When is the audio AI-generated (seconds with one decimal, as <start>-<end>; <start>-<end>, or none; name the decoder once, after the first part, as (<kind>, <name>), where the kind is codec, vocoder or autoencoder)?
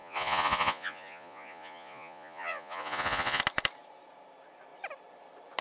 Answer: 0.0-3.4 (vocoder, Vocos)